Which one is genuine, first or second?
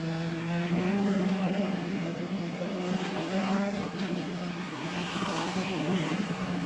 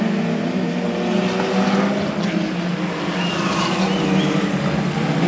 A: second